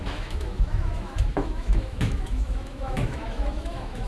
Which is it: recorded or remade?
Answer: remade